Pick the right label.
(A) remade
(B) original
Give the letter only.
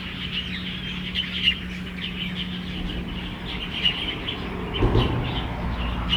B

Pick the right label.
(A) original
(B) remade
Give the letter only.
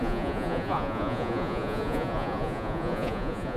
B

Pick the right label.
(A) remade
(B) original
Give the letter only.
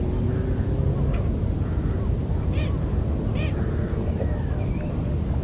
B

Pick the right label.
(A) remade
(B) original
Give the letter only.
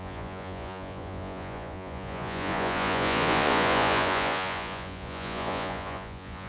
A